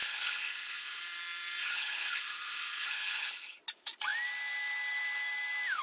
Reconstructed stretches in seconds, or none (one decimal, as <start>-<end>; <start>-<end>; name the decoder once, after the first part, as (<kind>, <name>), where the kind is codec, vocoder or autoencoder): 0.0-1.0 (codec, HILCodec); 1.6-3.6